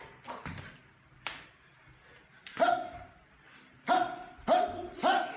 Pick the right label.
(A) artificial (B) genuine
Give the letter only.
B